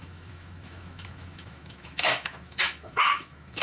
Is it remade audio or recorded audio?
remade